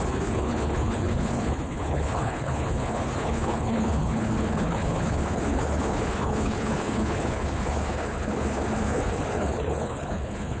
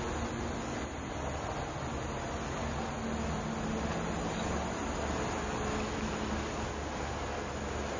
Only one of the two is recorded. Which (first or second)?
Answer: second